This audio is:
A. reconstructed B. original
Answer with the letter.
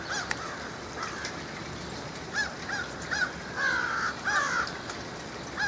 A